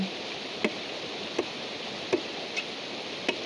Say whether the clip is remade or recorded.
recorded